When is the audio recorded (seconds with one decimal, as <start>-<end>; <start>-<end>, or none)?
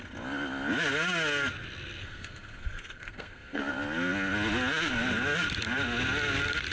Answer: 0.0-2.0; 3.6-6.7